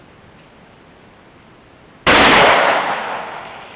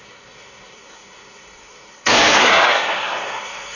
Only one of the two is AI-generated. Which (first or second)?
second